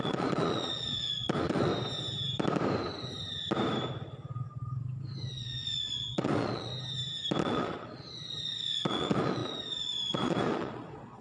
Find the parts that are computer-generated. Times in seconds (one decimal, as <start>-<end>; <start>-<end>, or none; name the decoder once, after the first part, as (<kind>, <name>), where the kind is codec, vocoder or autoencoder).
0.0-1.7 (vocoder, Vocos); 5.3-6.7; 7.4-11.2